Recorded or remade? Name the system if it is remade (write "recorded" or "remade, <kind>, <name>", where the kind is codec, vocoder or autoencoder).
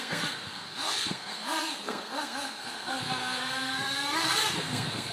remade, codec, SNAC